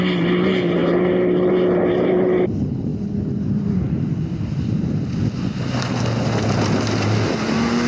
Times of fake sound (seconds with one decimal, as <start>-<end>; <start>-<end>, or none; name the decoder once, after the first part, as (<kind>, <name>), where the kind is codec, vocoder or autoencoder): 2.9-5.2 (vocoder, BigVGAN v2)